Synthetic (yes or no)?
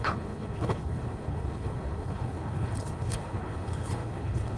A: yes